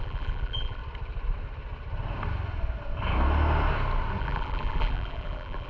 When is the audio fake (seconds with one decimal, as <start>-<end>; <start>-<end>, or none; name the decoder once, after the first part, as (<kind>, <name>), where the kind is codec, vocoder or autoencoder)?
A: 0.0-0.8 (vocoder, BigVGAN v2); 4.2-5.7